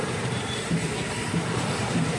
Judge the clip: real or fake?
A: fake